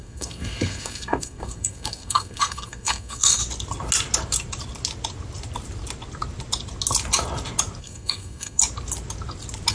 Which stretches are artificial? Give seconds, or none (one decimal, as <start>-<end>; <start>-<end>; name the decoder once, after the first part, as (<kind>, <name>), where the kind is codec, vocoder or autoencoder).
0.0-3.4 (codec, SNAC); 7.8-8.6